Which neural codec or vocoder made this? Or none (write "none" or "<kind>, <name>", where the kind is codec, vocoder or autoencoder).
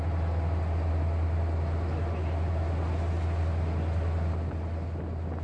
none